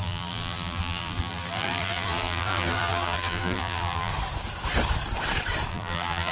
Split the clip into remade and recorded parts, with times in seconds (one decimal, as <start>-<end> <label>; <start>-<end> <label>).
0.0-4.1 remade; 4.1-5.7 recorded; 5.7-6.3 remade